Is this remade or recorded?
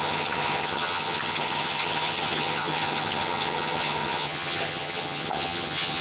remade